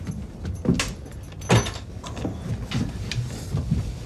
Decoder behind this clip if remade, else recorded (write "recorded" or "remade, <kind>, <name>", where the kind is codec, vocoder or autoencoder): recorded